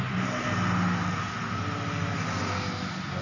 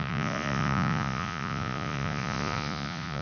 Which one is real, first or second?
first